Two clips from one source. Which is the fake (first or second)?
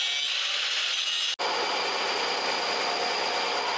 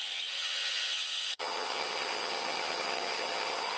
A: second